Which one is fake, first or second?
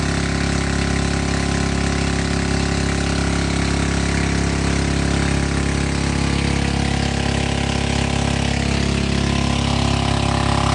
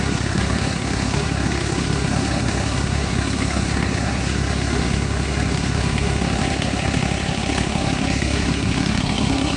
second